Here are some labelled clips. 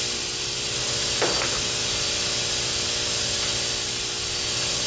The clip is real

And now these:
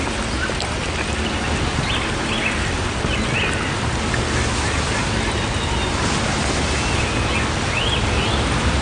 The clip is real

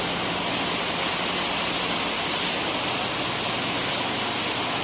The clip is real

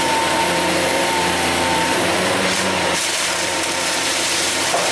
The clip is fake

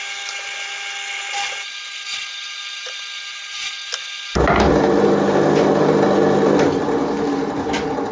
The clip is real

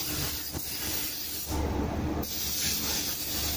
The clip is real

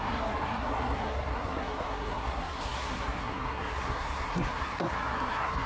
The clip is fake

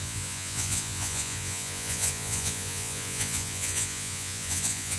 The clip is fake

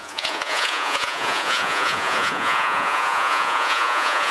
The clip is fake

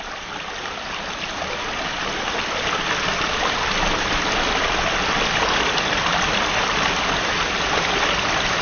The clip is real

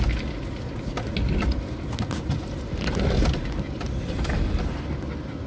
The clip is real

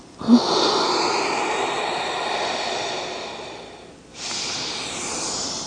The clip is real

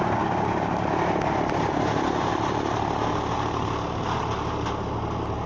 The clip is real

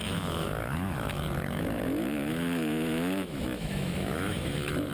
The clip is fake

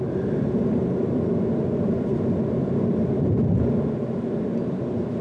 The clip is fake